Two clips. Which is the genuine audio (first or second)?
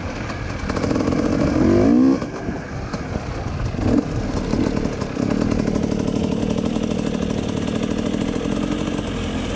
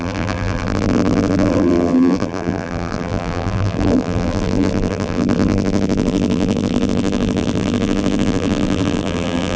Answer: first